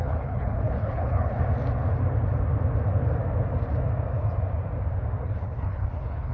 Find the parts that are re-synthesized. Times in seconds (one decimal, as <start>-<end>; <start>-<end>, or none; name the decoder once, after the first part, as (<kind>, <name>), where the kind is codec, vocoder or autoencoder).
0.0-1.4 (codec, HILCodec); 5.2-6.3